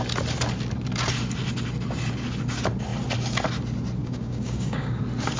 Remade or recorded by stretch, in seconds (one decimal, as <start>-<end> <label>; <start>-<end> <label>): 0.0-4.0 recorded; 4.0-5.0 remade; 5.0-5.4 recorded